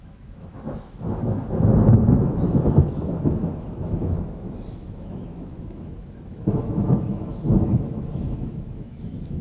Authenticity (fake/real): fake